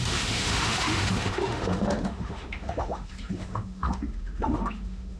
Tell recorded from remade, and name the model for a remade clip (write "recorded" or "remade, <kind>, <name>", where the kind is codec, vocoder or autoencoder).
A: remade, autoencoder, DAC-VAE